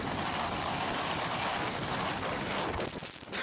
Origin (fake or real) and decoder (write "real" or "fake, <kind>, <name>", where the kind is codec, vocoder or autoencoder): real